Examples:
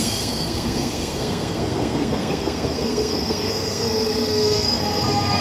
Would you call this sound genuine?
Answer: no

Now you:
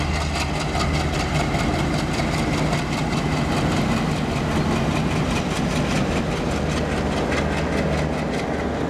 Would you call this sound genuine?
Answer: yes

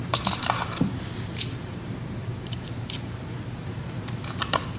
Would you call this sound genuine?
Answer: no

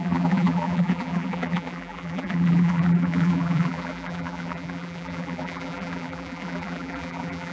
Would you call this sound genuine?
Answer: no